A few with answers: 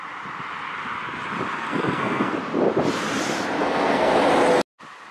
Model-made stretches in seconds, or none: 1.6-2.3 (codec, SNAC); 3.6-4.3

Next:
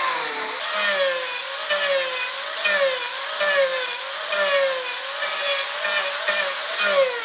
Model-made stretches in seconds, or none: none

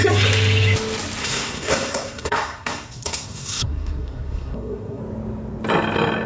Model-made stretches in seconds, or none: 1.2-5.0 (codec, SNAC)

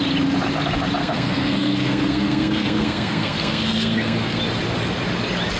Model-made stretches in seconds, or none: 1.0-4.4 (codec, SNAC)